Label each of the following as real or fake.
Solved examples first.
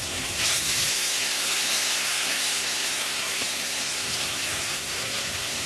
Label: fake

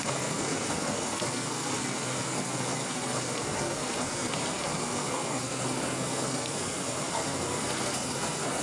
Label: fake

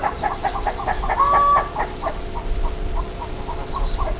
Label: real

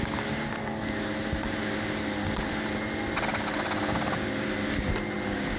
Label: real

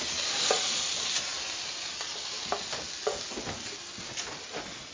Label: real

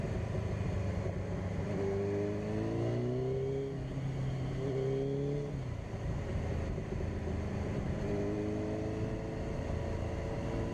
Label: real